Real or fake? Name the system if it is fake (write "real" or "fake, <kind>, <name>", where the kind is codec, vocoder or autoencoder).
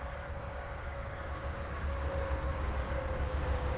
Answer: fake, codec, DAC